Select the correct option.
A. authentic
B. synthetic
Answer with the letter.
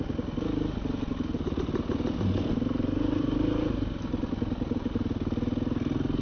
A